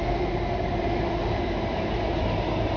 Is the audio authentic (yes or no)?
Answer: yes